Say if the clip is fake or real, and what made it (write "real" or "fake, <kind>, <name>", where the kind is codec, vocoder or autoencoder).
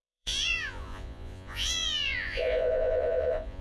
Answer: fake, vocoder, Vocos